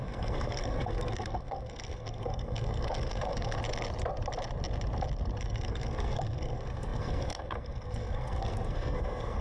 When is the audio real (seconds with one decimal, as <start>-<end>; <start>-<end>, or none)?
3.6-5.4